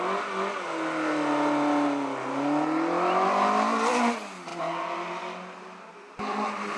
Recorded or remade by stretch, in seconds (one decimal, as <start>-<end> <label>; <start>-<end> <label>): 0.0-6.8 recorded